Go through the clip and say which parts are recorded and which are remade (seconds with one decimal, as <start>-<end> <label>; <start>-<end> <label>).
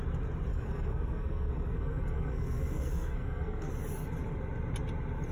0.0-0.5 recorded; 0.5-3.7 remade; 3.7-5.3 recorded